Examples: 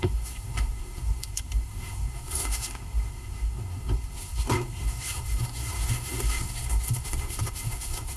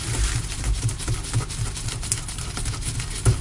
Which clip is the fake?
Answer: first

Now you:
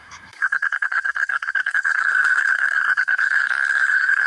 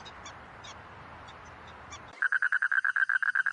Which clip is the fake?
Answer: first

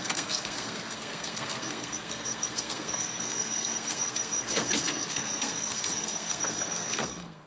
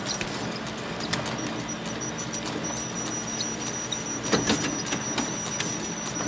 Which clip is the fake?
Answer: first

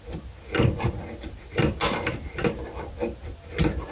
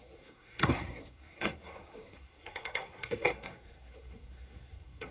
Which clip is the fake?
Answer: second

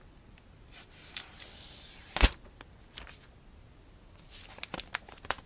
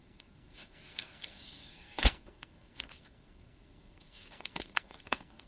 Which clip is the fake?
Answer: second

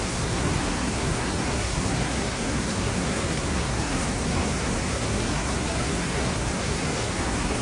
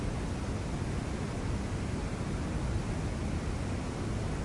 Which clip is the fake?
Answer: first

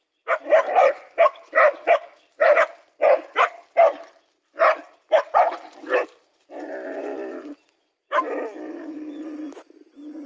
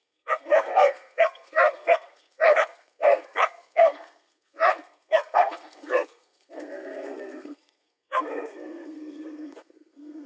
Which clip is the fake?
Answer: second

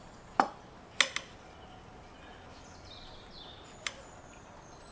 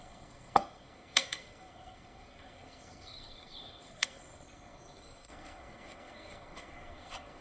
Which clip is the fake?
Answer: second